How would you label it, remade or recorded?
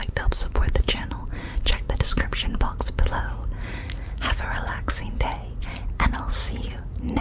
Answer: remade